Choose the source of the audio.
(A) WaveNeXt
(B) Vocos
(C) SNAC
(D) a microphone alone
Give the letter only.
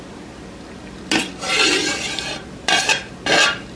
D